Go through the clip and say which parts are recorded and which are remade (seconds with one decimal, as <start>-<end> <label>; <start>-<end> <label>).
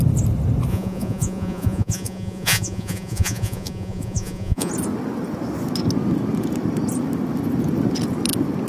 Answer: 0.0-0.7 recorded; 0.7-4.7 remade; 4.7-8.7 recorded